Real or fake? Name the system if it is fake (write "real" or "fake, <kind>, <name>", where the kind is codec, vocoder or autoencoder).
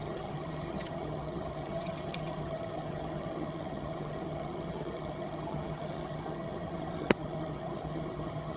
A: fake, vocoder, HiFi-GAN